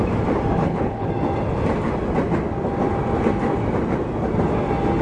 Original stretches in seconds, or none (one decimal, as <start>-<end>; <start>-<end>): 0.0-0.6; 1.1-5.0